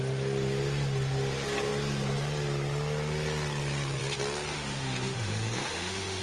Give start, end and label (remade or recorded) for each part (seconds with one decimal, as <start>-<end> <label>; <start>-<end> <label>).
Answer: 0.0-4.5 recorded; 4.5-6.2 remade